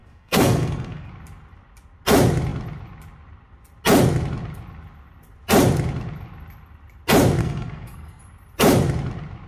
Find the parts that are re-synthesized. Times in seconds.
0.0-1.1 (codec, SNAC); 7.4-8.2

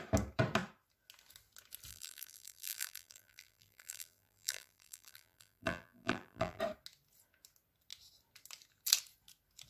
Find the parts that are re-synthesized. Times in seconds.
1.9-6.6 (vocoder, BigVGAN v2)

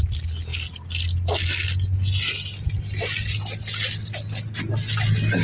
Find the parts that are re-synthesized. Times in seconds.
none

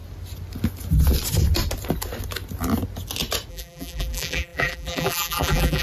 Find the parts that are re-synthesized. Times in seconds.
3.5-5.8 (vocoder, BigVGAN v2)